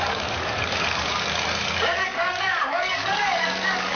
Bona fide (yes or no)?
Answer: no